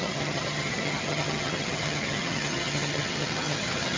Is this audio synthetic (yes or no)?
yes